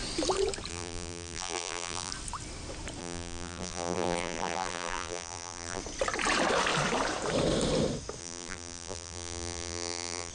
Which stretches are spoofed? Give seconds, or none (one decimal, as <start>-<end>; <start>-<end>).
0.7-2.1; 3.0-5.8; 8.2-10.3